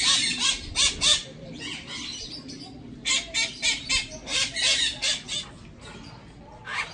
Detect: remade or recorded recorded